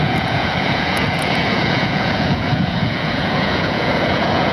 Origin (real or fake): fake